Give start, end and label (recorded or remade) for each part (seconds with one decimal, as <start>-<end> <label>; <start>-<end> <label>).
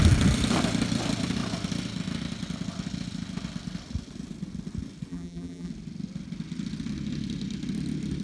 0.0-5.1 recorded; 5.1-5.7 remade; 5.7-8.2 recorded